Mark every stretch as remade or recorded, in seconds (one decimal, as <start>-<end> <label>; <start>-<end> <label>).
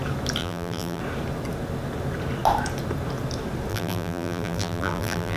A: 0.0-0.4 recorded; 0.4-1.0 remade; 1.0-3.7 recorded; 3.7-5.4 remade